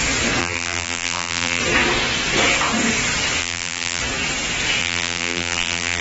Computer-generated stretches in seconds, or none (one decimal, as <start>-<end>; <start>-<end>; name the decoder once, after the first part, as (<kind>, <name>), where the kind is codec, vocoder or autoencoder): 0.4-1.6 (vocoder, BigVGAN v2); 3.4-4.0; 4.8-6.0